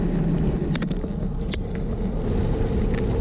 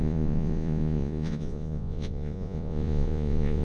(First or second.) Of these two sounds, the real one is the first